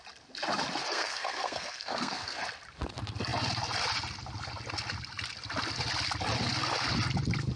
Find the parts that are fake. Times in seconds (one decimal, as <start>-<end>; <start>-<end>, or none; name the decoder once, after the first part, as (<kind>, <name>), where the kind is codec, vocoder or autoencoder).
0.8-2.4 (codec, SNAC)

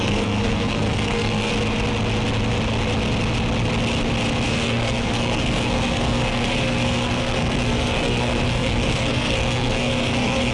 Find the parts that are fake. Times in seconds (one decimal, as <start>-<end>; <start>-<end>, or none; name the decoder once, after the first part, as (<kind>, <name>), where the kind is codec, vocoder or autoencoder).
0.0-1.5 (codec, SNAC); 4.5-10.5

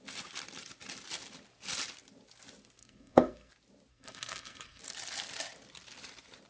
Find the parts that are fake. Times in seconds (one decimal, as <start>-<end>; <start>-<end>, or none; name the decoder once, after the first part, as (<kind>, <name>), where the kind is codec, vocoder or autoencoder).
2.8-3.5 (codec, SNAC); 3.9-4.8

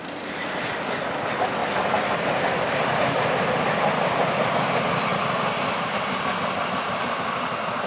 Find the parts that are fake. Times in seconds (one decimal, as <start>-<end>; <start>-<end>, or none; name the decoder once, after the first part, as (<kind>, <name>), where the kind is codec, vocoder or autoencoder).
none